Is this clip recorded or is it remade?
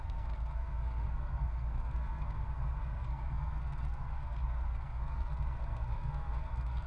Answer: remade